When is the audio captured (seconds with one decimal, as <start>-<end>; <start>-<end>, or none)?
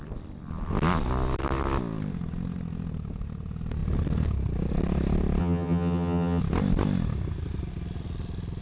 0.0-5.4; 6.4-8.6